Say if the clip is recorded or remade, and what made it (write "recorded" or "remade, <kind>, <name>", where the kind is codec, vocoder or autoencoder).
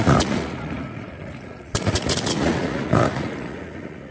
remade, vocoder, Vocos